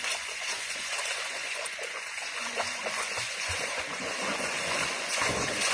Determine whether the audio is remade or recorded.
remade